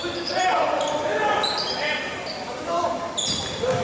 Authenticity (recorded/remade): recorded